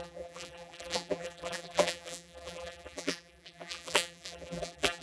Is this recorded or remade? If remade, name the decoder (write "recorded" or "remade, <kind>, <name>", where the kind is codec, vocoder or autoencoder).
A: remade, vocoder, BigVGAN v2